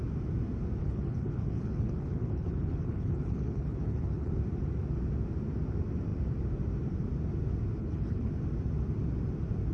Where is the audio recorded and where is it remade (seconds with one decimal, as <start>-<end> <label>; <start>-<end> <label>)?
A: 0.0-0.8 recorded; 0.8-4.3 remade; 4.3-7.8 recorded; 7.8-8.3 remade; 8.3-9.7 recorded